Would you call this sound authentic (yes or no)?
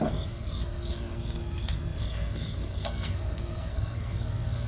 no